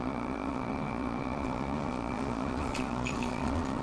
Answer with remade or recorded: remade